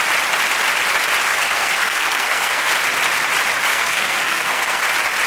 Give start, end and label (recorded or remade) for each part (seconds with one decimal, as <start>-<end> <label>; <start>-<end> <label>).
0.0-1.3 recorded; 1.3-2.7 remade; 2.7-3.7 recorded; 3.7-4.8 remade; 4.8-5.3 recorded